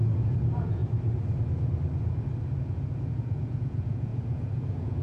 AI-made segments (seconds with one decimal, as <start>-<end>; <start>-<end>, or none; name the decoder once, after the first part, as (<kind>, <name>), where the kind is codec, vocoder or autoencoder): 0.0-0.8 (vocoder, Vocos); 2.6-5.0